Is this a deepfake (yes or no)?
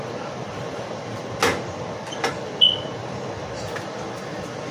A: no